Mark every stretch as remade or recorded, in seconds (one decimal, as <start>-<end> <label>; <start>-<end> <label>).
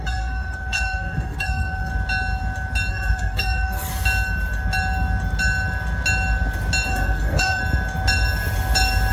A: 0.0-1.9 remade; 1.9-2.9 recorded; 2.9-3.9 remade; 3.9-6.9 recorded; 6.9-7.6 remade; 7.6-9.1 recorded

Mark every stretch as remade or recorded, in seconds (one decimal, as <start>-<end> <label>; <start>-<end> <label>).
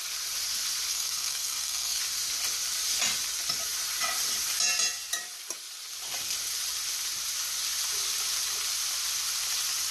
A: 0.0-0.9 recorded; 0.9-2.0 remade; 2.0-9.9 recorded